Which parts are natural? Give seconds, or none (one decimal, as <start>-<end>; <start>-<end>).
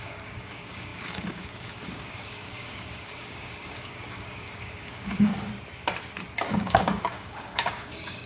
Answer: 5.3-6.5